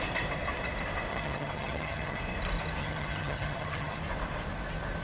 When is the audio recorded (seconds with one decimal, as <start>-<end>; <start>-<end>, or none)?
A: 0.0-1.1; 2.2-2.8; 4.0-5.0